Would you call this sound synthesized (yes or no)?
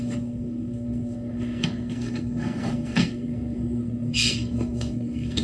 yes